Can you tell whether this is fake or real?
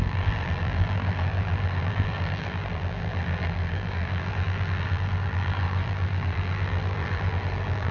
fake